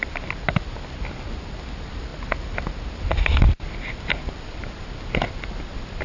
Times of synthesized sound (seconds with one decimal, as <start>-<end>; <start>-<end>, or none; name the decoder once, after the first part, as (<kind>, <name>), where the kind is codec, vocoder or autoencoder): none